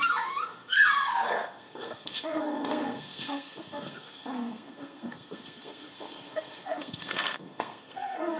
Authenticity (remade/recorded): remade